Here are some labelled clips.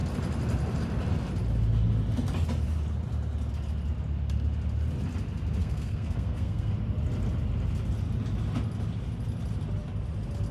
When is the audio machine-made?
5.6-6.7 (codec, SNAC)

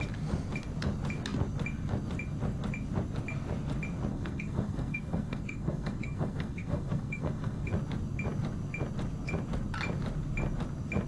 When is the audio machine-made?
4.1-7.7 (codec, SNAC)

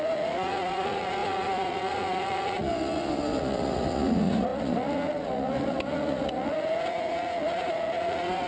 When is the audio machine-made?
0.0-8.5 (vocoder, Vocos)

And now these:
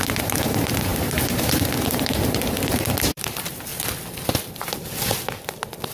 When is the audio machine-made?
0.0-3.7 (vocoder, BigVGAN v2)

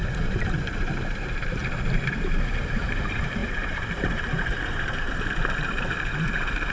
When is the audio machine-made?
0.0-1.6 (vocoder, BigVGAN v2); 2.1-6.7